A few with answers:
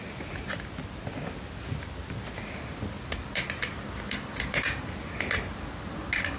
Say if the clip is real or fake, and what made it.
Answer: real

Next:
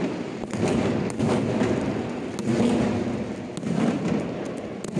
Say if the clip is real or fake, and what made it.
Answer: real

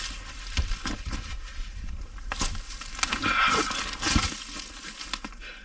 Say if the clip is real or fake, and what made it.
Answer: real